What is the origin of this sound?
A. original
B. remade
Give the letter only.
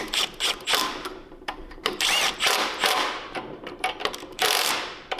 B